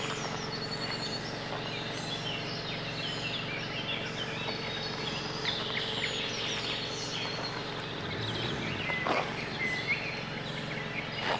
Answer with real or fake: real